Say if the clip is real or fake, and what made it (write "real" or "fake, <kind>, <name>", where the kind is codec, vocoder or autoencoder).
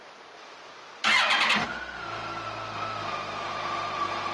real